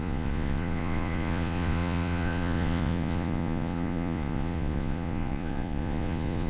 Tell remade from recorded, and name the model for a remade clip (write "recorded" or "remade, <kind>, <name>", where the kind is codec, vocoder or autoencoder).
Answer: remade, vocoder, Vocos